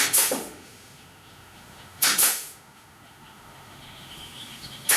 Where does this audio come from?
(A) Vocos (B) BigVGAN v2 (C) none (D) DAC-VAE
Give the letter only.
D